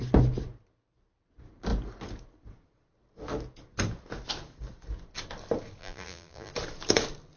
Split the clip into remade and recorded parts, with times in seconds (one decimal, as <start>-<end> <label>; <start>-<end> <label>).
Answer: 0.0-5.8 recorded; 5.8-6.5 remade; 6.5-7.4 recorded